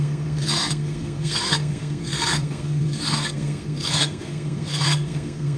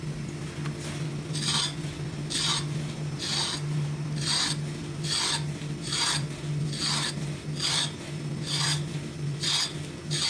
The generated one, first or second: first